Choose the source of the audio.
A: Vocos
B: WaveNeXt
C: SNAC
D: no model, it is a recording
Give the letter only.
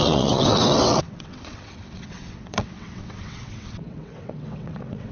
B